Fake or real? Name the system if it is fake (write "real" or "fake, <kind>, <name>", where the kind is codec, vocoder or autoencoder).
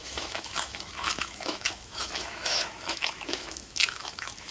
fake, autoencoder, DAC-VAE